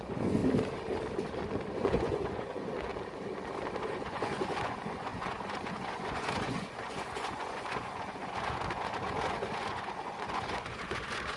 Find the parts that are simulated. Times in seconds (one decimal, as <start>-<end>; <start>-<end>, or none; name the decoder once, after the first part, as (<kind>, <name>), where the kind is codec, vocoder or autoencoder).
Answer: 0.0-0.4 (vocoder, Vocos); 1.7-2.9; 3.8-11.4